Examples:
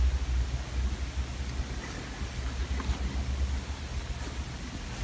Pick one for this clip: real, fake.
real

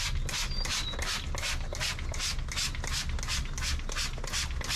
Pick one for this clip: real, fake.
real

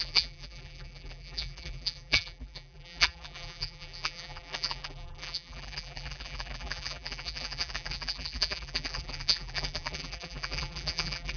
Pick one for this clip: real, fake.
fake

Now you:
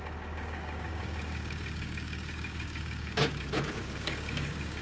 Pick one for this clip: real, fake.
fake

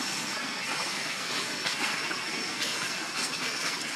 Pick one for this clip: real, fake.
fake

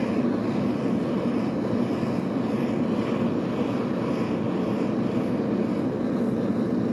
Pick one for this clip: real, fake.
real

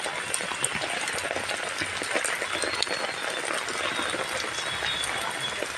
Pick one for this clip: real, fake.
real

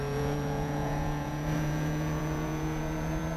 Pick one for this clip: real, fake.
fake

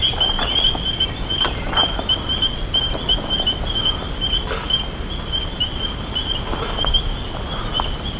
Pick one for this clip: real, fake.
real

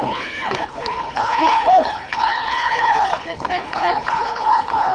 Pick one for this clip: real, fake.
fake